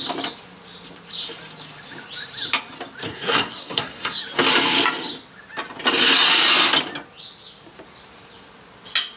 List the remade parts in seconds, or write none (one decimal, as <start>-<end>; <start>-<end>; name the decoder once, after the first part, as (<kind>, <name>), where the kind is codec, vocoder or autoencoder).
3.1-4.2 (codec, SNAC)